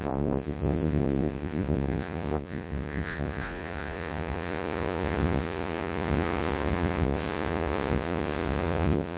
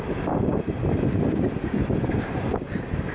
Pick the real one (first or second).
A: second